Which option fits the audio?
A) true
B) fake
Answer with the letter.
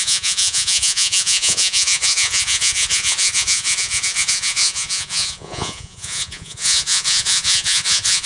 B